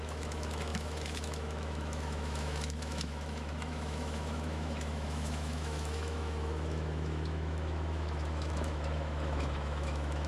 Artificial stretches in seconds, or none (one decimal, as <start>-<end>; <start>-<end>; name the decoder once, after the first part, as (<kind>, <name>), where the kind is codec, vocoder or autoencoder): 0.0-10.3 (autoencoder, DAC-VAE)